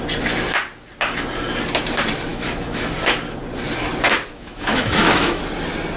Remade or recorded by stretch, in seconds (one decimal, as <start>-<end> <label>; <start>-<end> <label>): 0.0-2.3 recorded; 2.3-2.9 remade; 2.9-4.3 recorded; 4.3-5.4 remade; 5.4-6.0 recorded